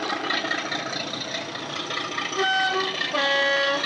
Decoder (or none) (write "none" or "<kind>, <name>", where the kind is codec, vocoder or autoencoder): none